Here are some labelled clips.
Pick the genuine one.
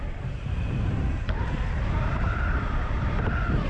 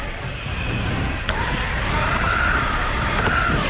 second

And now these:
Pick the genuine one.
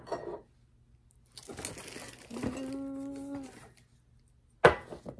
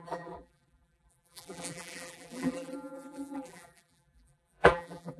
first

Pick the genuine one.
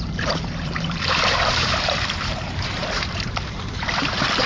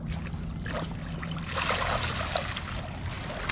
second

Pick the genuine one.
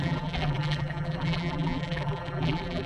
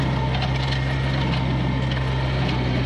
second